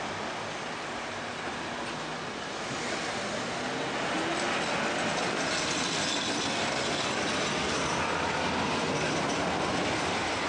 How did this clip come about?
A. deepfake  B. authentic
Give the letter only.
B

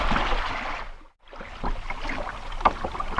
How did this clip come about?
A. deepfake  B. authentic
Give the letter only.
B